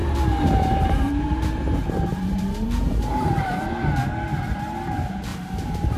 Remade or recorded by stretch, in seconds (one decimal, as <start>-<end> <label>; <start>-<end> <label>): 0.0-3.6 remade; 3.6-5.3 recorded; 5.3-6.0 remade